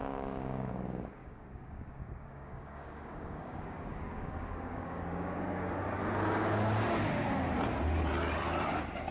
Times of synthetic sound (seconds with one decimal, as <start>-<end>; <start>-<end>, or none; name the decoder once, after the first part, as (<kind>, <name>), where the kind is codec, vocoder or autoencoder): 0.0-0.7 (codec, DAC); 1.2-6.0